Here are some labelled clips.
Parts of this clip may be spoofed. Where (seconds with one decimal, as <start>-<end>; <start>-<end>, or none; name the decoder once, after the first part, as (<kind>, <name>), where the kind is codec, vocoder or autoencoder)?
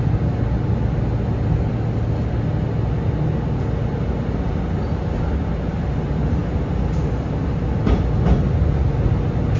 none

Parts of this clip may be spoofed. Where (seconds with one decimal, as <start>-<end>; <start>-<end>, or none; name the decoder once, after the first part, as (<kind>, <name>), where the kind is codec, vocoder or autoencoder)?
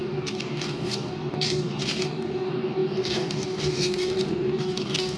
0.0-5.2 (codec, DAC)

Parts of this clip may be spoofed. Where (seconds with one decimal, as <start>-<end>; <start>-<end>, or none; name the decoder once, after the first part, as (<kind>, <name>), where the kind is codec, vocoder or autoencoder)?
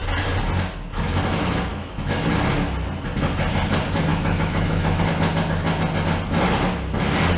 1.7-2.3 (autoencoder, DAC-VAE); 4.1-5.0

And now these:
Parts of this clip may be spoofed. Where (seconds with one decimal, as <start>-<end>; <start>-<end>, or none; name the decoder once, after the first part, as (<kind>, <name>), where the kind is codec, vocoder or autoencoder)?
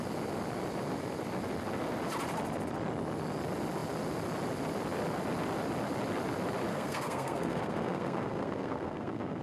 6.7-9.4 (codec, SNAC)